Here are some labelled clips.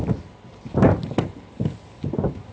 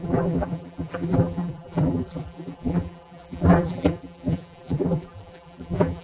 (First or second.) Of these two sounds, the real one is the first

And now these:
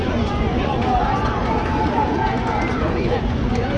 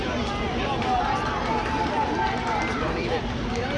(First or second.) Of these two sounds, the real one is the second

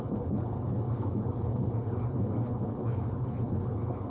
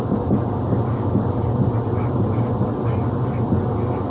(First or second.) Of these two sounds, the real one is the second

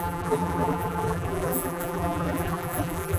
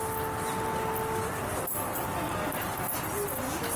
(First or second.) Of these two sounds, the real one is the second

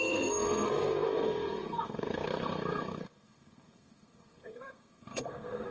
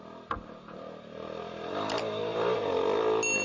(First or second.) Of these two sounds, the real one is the second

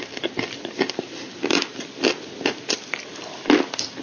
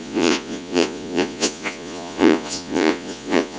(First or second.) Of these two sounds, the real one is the first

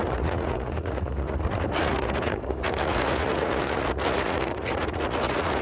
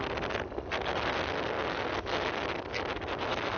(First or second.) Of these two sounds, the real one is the second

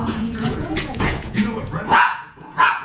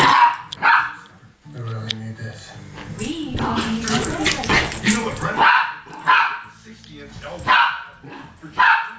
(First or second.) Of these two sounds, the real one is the second